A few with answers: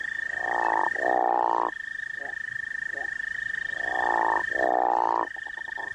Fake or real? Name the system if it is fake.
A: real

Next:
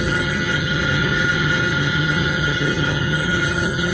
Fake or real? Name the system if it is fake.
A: fake, vocoder, HiFi-GAN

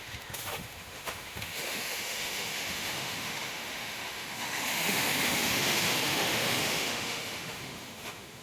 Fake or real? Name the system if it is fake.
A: fake, autoencoder, DAC-VAE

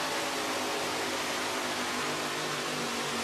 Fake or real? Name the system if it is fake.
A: real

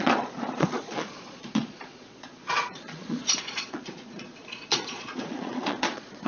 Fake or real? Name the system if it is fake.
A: fake, vocoder, Vocos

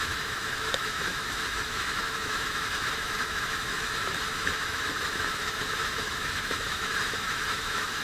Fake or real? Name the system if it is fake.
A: fake, autoencoder, DAC-VAE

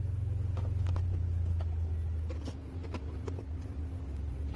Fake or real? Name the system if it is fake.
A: real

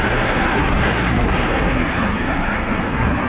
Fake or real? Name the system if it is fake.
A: fake, codec, SNAC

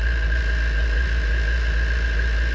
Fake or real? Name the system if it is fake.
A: real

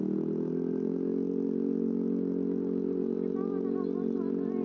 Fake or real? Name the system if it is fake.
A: real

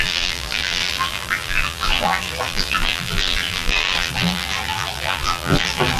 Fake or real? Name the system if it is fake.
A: fake, vocoder, BigVGAN v2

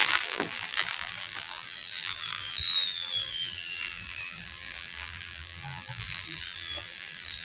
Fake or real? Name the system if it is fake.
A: fake, vocoder, BigVGAN v2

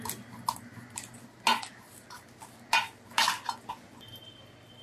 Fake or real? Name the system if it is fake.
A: real